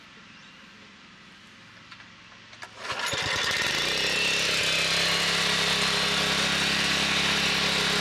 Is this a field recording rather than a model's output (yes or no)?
yes